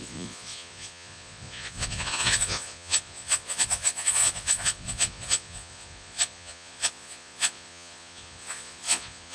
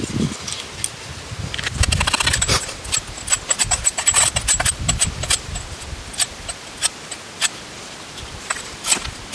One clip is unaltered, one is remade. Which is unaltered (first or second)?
second